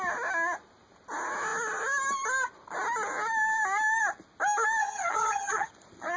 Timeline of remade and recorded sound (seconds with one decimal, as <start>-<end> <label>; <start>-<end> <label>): 0.0-4.8 recorded; 4.8-5.7 remade; 5.7-6.2 recorded